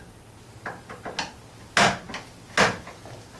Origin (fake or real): real